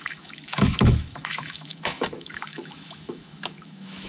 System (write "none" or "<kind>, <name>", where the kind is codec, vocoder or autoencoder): autoencoder, DAC-VAE